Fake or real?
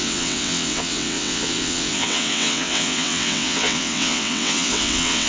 fake